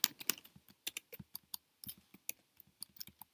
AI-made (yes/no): no